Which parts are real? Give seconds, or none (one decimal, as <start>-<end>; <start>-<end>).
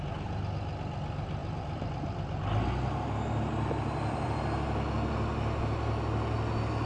0.0-1.4; 4.4-6.9